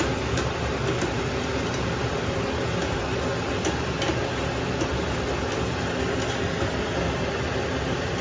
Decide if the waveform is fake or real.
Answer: real